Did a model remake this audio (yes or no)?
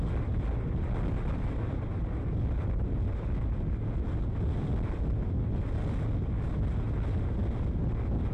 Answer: no